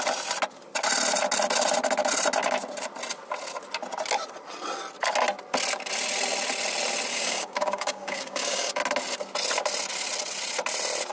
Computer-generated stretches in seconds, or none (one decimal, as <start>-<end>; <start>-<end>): 7.1-8.8